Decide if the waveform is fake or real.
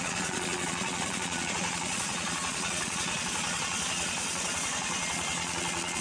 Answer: fake